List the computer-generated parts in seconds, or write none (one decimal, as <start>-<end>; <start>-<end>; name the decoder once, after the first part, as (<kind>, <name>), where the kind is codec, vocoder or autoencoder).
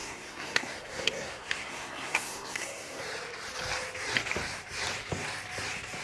0.0-3.0 (codec, SNAC)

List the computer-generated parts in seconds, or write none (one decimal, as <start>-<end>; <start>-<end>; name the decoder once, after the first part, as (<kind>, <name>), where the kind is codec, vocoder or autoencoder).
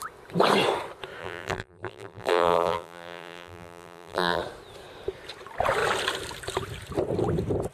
1.2-4.4 (vocoder, BigVGAN v2)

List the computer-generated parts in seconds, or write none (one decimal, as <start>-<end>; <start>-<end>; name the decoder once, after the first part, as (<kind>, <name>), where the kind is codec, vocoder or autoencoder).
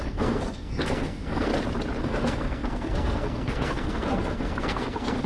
0.0-1.5 (codec, SNAC); 2.0-5.3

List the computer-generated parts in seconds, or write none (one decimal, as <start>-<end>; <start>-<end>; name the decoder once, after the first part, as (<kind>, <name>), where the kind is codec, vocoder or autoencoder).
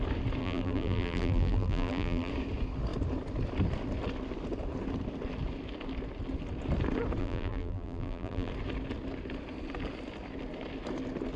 0.4-2.3 (vocoder, BigVGAN v2); 7.2-8.5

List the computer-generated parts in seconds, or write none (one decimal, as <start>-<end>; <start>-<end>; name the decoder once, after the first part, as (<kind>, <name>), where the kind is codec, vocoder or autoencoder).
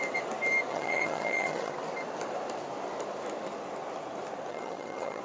0.7-1.7 (vocoder, HiFi-GAN); 4.5-5.2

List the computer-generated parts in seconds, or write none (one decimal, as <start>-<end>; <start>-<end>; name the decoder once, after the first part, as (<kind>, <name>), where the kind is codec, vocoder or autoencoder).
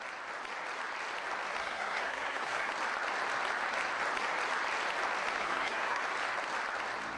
1.6-2.7 (codec, SNAC); 5.4-6.0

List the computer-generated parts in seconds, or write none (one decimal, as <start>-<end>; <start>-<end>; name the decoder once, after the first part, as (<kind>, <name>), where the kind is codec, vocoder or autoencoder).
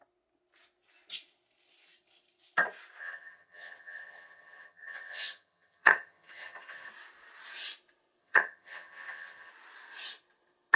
3.0-6.9 (vocoder, HiFi-GAN); 8.2-9.5